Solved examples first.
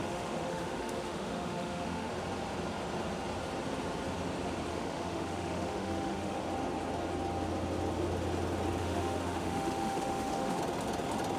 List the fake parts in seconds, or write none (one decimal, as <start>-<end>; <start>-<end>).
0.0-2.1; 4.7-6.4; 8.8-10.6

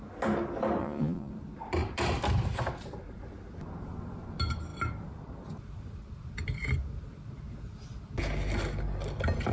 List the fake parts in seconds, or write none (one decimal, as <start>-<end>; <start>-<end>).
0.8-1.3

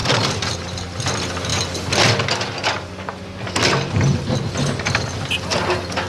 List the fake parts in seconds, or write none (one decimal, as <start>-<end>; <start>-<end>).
0.0-1.1

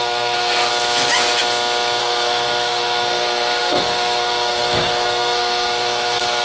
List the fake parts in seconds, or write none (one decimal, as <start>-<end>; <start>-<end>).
0.0-0.7; 2.0-6.4